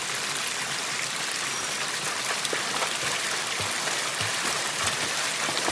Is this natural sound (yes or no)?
yes